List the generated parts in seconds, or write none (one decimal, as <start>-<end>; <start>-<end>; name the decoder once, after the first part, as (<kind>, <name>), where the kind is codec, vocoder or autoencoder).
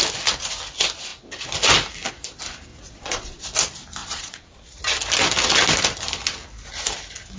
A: 2.7-3.4 (vocoder, Vocos); 4.0-4.8